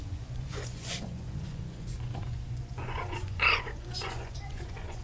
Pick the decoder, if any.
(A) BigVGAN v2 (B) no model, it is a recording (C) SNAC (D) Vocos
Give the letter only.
D